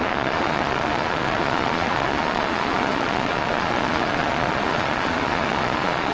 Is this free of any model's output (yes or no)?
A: no